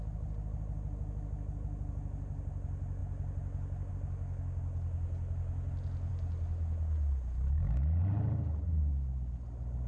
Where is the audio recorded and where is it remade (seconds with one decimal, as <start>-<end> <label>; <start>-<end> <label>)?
0.0-9.9 recorded